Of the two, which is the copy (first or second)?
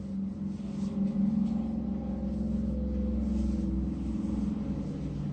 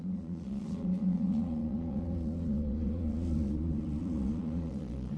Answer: second